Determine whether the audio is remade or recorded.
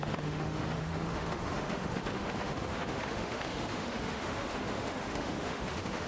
remade